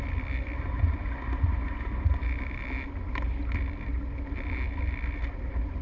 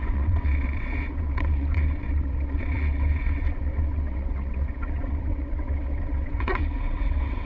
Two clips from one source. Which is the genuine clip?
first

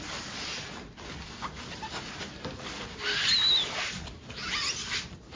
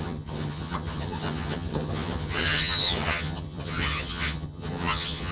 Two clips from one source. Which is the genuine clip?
first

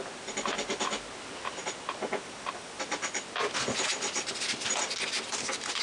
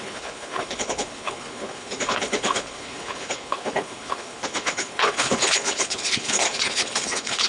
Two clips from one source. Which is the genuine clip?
first